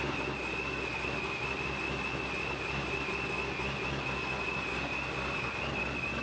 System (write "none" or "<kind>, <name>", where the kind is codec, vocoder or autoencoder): none